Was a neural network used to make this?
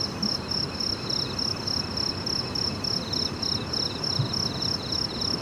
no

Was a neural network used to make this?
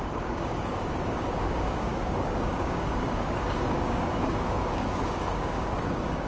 yes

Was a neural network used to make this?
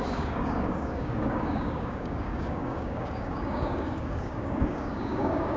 yes